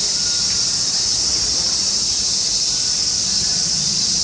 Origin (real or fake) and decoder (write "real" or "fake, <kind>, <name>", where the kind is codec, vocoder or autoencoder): real